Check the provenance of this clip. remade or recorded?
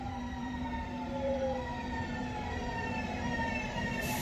remade